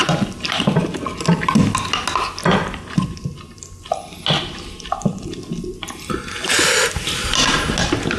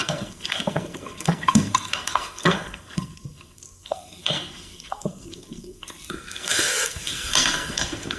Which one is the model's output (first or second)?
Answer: second